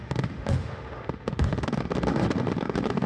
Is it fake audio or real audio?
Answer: fake